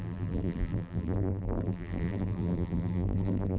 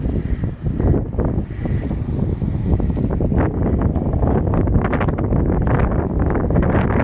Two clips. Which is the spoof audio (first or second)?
first